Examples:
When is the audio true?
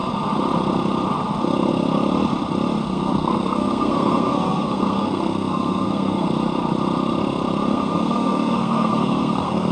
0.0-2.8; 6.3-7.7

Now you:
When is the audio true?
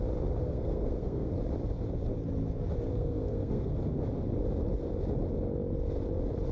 0.0-0.4; 1.4-2.9; 3.8-6.5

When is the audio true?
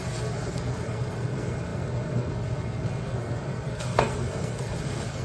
none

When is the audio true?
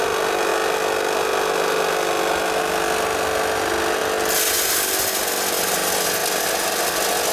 0.0-7.3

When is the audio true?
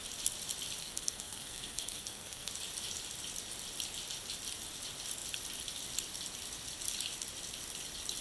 0.0-0.8; 2.5-8.2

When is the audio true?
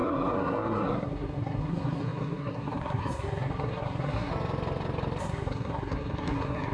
4.3-5.2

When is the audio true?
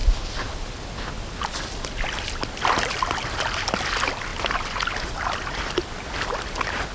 0.0-6.9